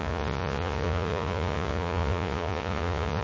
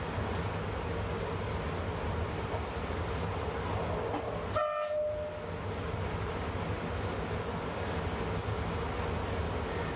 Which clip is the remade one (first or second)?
first